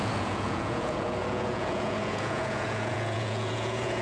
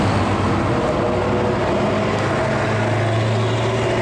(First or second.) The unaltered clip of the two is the second